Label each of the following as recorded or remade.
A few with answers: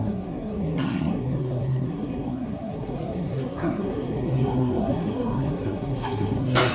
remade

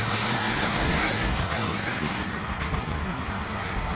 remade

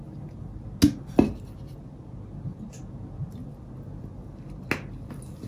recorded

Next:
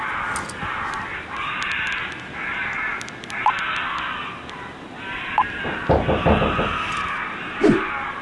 recorded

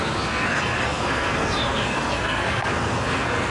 remade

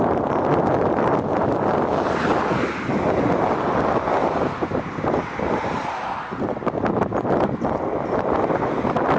recorded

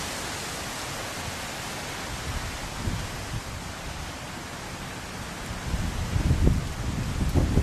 recorded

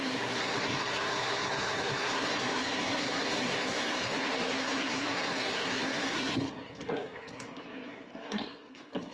remade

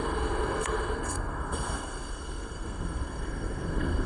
remade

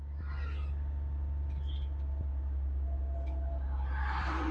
recorded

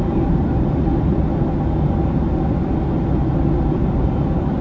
recorded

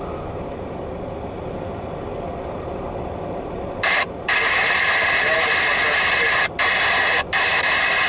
recorded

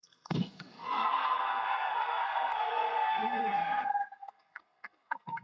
remade